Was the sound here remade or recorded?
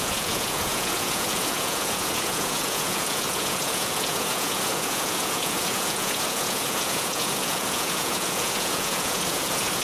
remade